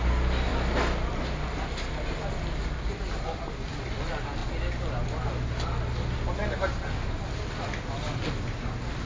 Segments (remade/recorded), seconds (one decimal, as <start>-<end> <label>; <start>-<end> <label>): 0.0-9.1 recorded